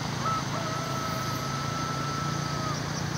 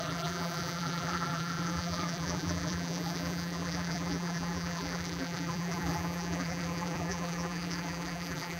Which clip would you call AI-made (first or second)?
second